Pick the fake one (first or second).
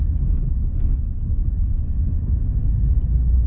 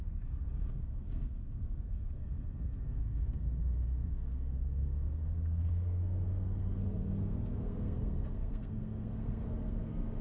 second